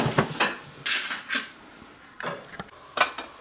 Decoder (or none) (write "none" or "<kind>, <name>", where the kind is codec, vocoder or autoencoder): none